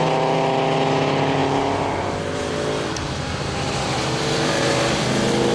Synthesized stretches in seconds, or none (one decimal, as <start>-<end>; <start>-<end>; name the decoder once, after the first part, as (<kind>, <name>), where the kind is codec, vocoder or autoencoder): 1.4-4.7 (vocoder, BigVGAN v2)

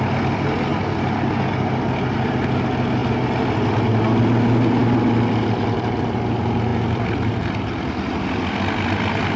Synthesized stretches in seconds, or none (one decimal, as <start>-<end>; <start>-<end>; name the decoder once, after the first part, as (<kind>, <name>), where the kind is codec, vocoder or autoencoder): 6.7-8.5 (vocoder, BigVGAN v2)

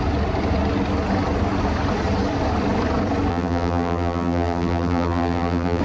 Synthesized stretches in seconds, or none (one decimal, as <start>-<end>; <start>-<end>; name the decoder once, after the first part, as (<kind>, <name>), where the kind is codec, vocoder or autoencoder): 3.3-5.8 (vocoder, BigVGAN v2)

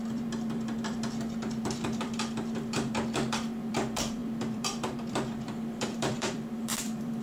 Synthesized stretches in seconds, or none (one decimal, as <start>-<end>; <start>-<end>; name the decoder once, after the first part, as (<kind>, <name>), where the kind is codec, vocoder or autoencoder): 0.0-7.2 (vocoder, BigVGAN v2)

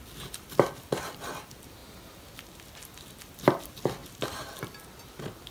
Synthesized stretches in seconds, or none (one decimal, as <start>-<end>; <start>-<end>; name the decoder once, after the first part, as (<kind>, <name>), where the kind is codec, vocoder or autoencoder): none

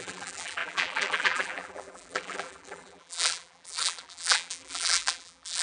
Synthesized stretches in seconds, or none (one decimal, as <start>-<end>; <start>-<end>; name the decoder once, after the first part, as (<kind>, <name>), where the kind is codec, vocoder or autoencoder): 0.0-5.6 (vocoder, BigVGAN v2)